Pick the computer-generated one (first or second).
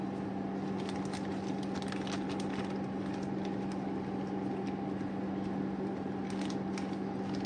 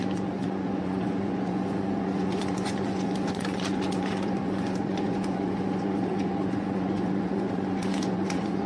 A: second